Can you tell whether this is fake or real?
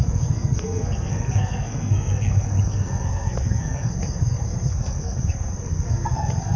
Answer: fake